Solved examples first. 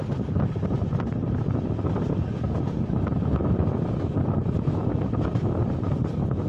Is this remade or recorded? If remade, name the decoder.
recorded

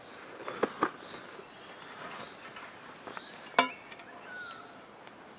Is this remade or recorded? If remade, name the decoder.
recorded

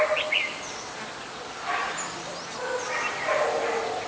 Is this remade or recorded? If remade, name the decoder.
recorded